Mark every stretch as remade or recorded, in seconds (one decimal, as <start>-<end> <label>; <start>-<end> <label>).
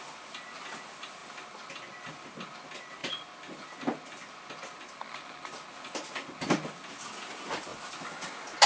0.0-8.7 recorded